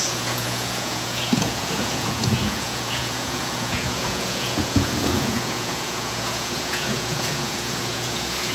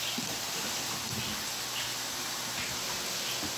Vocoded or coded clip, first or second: first